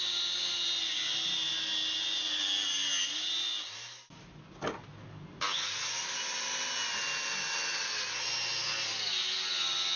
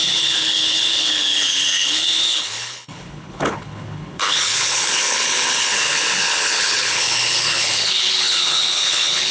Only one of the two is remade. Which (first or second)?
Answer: second